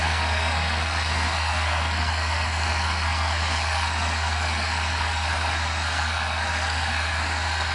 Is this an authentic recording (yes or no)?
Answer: no